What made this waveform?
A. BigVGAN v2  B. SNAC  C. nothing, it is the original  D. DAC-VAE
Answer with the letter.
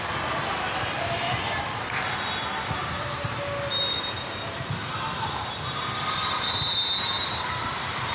C